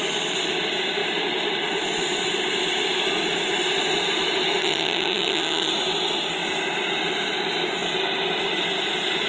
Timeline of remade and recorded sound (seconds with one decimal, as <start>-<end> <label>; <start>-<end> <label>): 0.0-4.6 recorded; 4.6-5.7 remade; 5.7-9.3 recorded